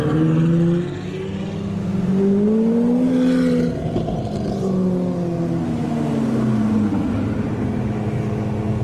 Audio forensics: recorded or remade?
recorded